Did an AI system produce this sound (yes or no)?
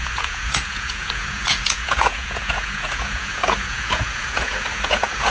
yes